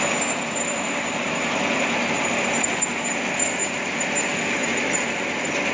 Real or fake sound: real